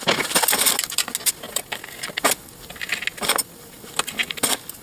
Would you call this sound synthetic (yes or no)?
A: no